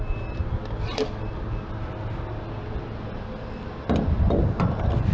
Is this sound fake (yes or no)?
no